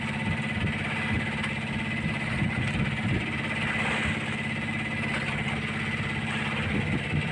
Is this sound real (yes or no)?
yes